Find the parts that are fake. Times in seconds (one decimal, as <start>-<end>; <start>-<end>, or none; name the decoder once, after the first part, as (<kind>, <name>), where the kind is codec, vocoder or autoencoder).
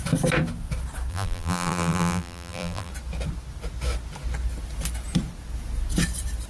1.1-2.9 (vocoder, BigVGAN v2)